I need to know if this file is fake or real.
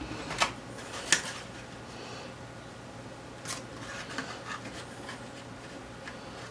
real